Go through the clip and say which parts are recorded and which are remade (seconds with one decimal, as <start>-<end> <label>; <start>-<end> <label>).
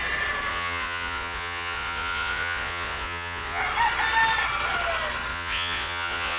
0.0-0.5 recorded; 0.5-3.6 remade; 3.6-5.3 recorded; 5.3-6.4 remade